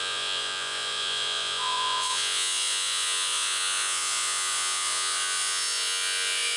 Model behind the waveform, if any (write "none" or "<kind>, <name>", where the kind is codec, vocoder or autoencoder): vocoder, Vocos